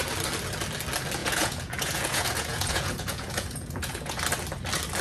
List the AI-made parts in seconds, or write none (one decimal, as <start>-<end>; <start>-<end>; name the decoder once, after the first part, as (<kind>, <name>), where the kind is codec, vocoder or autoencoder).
1.2-4.2 (vocoder, Vocos)